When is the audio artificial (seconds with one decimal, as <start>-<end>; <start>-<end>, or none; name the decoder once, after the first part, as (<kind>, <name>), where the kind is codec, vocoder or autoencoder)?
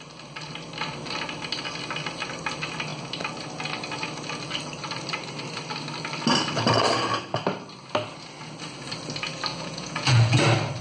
9.5-10.4 (vocoder, Vocos)